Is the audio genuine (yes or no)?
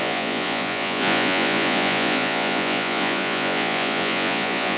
no